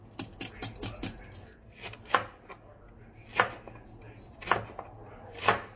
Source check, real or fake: real